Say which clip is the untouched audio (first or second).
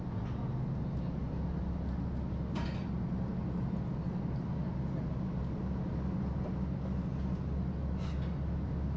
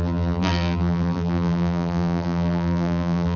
first